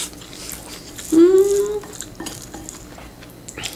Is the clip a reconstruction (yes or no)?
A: no